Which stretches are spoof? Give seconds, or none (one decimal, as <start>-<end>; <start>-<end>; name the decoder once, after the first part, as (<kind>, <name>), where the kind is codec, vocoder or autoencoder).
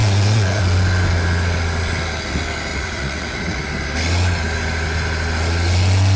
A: 0.0-0.6 (vocoder, Vocos); 2.7-3.6